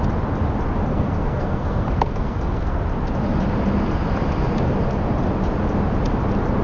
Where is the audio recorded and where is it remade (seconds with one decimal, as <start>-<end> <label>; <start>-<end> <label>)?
0.0-0.9 recorded; 0.9-2.8 remade; 2.8-6.6 recorded